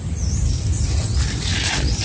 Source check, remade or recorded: recorded